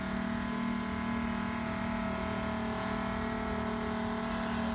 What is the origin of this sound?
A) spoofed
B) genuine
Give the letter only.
B